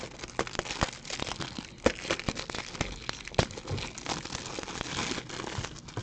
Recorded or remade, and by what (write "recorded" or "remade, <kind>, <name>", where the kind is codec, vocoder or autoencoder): recorded